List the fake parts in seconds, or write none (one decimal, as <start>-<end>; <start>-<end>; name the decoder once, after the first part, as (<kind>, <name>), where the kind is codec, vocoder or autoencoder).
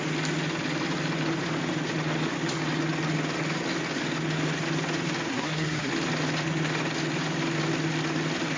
5.3-5.9 (codec, SNAC)